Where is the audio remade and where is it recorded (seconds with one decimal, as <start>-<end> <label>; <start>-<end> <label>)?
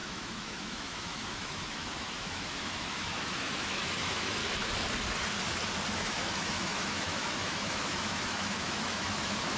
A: 0.0-4.4 remade; 4.4-5.9 recorded; 5.9-9.6 remade